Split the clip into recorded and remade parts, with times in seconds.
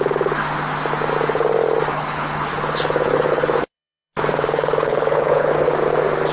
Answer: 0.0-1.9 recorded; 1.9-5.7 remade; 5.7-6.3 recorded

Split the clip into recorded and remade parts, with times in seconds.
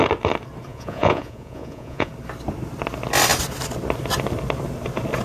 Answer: 0.0-0.7 recorded; 0.7-2.1 remade; 2.1-5.2 recorded